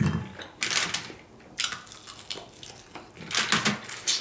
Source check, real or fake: real